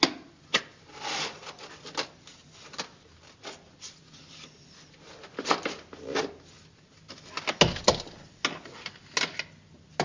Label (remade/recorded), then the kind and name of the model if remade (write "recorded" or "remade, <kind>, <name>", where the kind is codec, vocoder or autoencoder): recorded